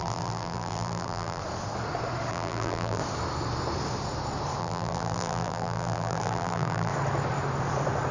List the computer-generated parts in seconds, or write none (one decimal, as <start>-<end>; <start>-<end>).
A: 0.0-1.4; 2.3-3.0; 4.6-6.9